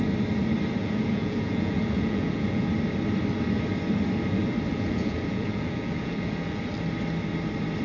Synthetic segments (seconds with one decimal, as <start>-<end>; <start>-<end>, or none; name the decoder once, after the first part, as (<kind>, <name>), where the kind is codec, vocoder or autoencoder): 0.8-2.7 (vocoder, Vocos); 4.7-6.6